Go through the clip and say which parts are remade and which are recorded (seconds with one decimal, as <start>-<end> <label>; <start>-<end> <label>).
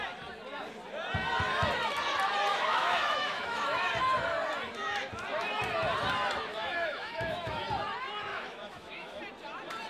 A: 0.0-2.5 recorded; 2.5-3.9 remade; 3.9-6.5 recorded; 6.5-7.6 remade; 7.6-8.3 recorded; 8.3-9.2 remade; 9.2-9.9 recorded